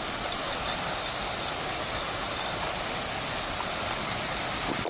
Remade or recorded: recorded